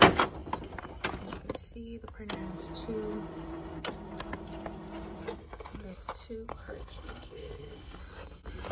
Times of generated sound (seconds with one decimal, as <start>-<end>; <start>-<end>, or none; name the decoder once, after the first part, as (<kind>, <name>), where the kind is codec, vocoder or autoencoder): 6.5-8.0 (codec, SNAC)